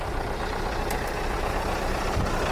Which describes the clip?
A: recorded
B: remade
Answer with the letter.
A